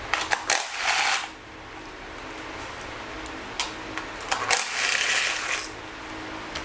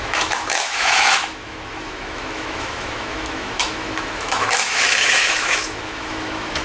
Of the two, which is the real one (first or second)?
first